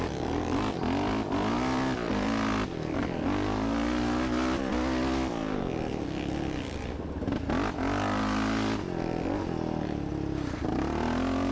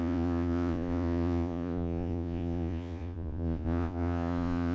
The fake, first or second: second